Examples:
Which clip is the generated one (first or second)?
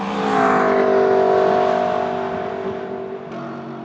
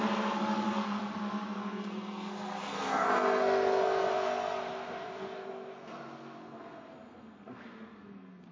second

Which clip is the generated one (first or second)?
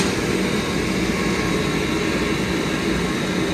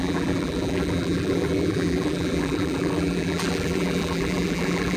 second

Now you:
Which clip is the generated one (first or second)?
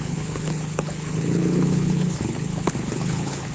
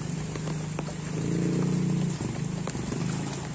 first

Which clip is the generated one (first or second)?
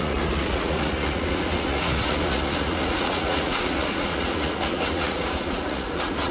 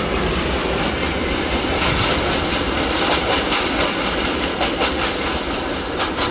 first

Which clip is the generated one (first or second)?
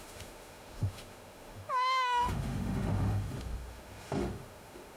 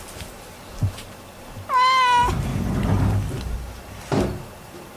first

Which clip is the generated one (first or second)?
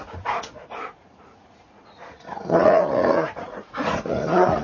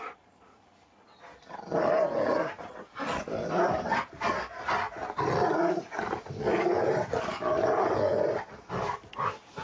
first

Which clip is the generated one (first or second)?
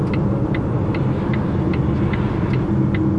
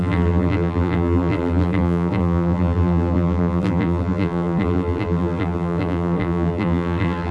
second